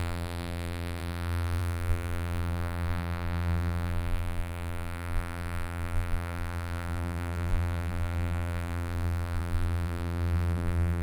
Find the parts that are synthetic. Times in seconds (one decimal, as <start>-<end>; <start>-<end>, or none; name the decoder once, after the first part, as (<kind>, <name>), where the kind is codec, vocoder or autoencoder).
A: 0.0-11.0 (vocoder, BigVGAN v2)